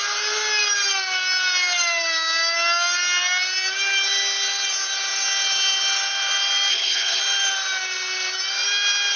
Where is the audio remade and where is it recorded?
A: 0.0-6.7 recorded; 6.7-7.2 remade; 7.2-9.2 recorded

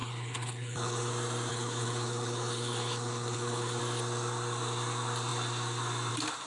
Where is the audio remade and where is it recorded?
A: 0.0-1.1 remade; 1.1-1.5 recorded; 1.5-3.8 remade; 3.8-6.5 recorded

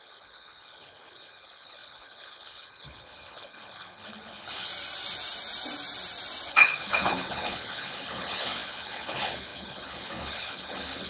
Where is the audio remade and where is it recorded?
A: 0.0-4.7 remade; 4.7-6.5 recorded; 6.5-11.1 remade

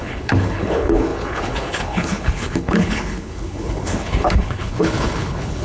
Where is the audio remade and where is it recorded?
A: 0.0-5.6 remade

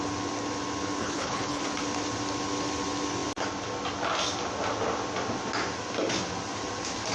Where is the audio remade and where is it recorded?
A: 0.0-1.0 recorded; 1.0-1.6 remade; 1.6-7.1 recorded

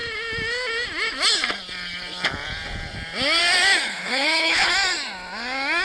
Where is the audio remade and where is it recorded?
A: 0.0-3.9 recorded; 3.9-4.7 remade; 4.7-5.8 recorded

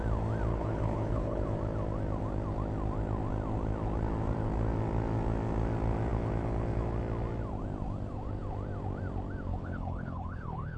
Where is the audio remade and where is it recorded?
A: 0.0-0.5 recorded; 0.5-1.4 remade; 1.4-9.5 recorded; 9.5-10.8 remade